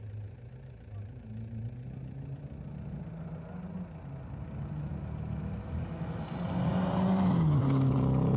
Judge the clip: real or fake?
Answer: real